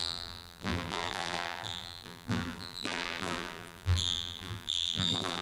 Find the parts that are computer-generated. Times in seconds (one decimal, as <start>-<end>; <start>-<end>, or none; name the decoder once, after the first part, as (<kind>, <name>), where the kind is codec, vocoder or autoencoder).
0.0-5.4 (vocoder, BigVGAN v2)